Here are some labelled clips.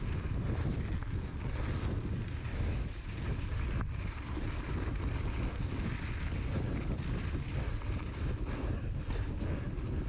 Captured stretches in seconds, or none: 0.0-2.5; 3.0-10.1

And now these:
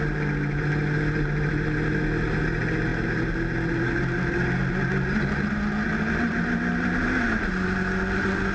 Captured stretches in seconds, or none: 0.0-8.5